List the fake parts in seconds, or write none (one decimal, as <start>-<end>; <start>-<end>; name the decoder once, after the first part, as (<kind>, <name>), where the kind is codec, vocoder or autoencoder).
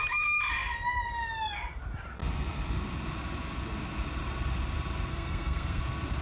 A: 5.1-5.8 (codec, SNAC)